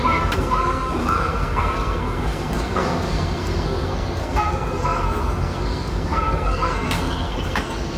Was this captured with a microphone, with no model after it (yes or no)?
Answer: no